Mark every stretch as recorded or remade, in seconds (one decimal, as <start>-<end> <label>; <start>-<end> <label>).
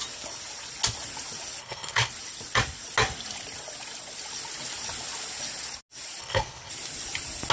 0.0-1.6 recorded; 1.6-2.1 remade; 2.1-6.2 recorded; 6.2-6.7 remade; 6.7-7.5 recorded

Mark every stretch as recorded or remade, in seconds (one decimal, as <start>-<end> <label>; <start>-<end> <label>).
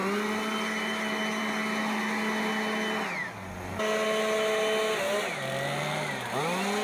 0.0-6.8 recorded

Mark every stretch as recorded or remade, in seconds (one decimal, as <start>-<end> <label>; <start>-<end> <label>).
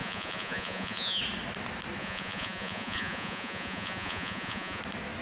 0.0-1.2 remade; 1.2-2.0 recorded; 2.0-4.8 remade; 4.8-5.2 recorded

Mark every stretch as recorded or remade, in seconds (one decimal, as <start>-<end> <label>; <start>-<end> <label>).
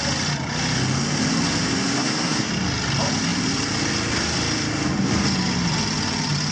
0.0-2.0 recorded; 2.0-2.5 remade; 2.5-6.5 recorded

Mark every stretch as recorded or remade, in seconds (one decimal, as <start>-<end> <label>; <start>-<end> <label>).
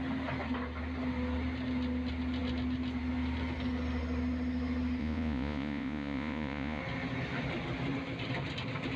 0.0-5.0 recorded; 5.0-6.8 remade; 6.8-9.0 recorded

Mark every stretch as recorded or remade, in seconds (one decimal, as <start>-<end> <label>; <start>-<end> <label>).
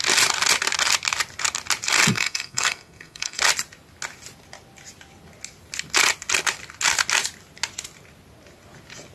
0.0-2.1 recorded; 2.1-3.4 remade; 3.4-9.1 recorded